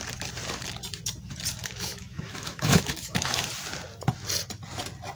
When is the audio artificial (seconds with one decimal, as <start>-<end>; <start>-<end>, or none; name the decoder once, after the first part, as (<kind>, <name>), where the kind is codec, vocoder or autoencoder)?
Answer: 1.6-3.4 (autoencoder, DAC-VAE)